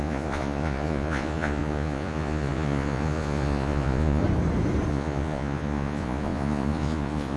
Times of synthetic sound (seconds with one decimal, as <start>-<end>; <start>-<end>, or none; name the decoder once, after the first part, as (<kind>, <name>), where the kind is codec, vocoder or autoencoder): 0.0-4.2 (vocoder, Vocos); 4.9-7.4